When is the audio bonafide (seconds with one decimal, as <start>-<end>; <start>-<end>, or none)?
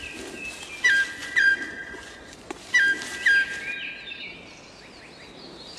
0.0-1.2; 2.7-5.8